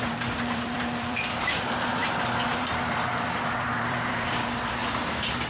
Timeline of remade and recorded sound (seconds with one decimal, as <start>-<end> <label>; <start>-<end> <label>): 0.0-5.5 remade